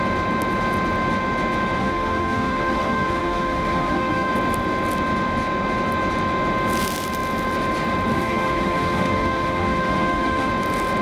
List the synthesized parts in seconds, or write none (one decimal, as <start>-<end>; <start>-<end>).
1.8-4.3; 8.1-10.5